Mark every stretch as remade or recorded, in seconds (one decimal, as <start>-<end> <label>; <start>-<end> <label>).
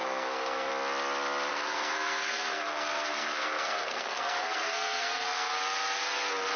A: 0.0-0.7 remade; 0.7-1.5 recorded; 1.5-5.5 remade; 5.5-6.6 recorded